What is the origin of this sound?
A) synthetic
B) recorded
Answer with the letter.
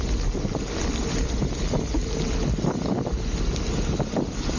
B